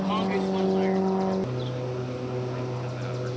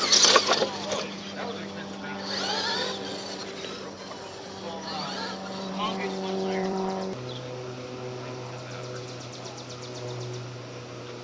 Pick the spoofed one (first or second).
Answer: second